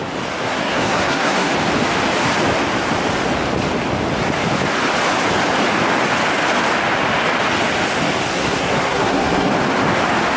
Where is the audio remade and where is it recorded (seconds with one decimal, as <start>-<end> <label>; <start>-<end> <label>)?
0.0-0.4 recorded; 0.4-1.5 remade; 1.5-8.3 recorded; 8.3-9.5 remade; 9.5-10.4 recorded